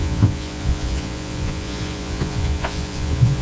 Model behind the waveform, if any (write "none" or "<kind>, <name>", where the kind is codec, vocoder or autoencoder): vocoder, Vocos